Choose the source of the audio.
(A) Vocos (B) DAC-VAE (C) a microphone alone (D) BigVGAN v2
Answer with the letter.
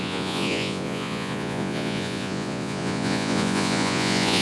A